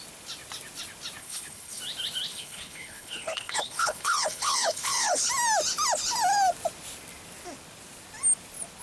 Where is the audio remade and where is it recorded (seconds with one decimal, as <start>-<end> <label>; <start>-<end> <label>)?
0.0-1.2 recorded; 1.2-1.8 remade; 1.8-2.3 recorded; 2.3-5.3 remade; 5.3-8.8 recorded